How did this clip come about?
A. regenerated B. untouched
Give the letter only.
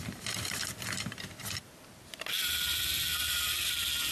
A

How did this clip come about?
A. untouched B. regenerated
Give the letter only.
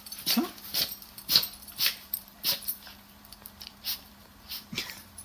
B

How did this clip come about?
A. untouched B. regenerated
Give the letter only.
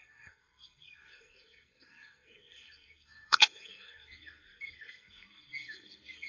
B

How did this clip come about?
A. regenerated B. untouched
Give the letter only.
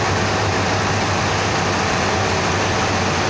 B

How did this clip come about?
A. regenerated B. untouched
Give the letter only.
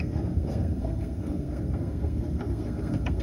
A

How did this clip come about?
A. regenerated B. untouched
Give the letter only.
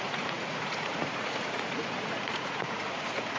A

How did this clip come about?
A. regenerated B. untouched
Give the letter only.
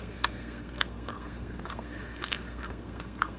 A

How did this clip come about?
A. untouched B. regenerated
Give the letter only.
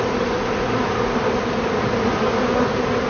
A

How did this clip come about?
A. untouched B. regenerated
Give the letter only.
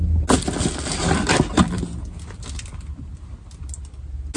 A